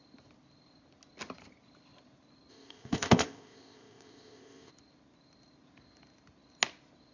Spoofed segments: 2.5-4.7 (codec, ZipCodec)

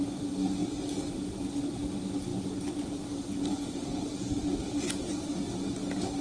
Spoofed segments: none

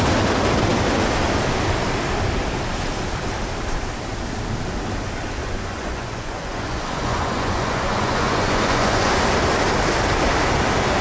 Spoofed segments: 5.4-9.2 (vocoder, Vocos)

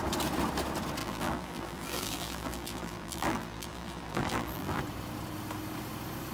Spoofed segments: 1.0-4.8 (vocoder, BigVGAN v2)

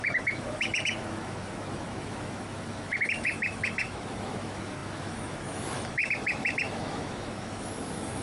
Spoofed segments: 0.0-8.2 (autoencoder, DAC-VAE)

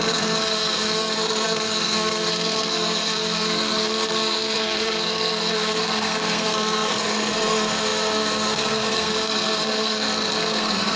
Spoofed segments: 0.0-11.0 (codec, SNAC)